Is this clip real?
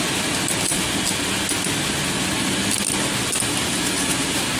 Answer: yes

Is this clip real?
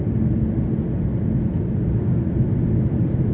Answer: yes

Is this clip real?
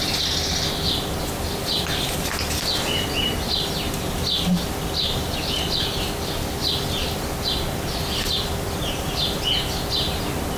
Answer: yes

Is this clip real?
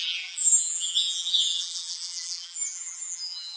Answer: no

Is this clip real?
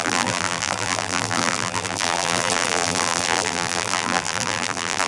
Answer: no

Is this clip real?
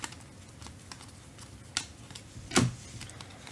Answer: yes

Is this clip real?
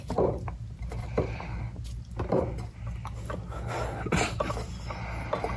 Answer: yes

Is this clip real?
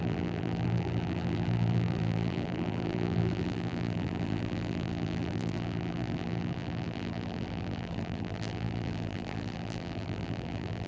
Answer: no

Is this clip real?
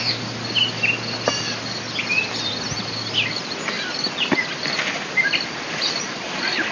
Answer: yes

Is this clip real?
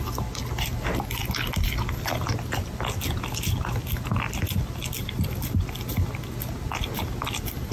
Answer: yes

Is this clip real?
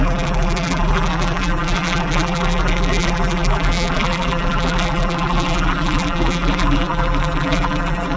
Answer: no